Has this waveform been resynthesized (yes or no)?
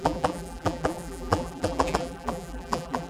yes